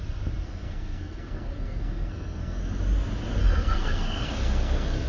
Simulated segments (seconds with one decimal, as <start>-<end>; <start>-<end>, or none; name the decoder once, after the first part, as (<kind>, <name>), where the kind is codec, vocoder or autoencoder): 0.4-2.6 (codec, SNAC); 3.4-5.1